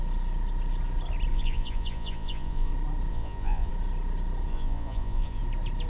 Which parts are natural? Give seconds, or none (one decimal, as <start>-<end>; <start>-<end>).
0.0-1.3; 2.7-3.1; 3.7-4.5; 5.4-5.9